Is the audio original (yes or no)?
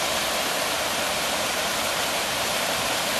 yes